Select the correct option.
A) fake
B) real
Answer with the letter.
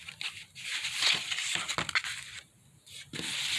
B